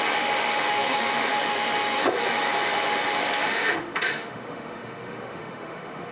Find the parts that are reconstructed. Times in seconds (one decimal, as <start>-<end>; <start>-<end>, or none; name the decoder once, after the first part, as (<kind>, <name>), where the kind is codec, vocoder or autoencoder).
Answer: 0.0-6.1 (autoencoder, DAC-VAE)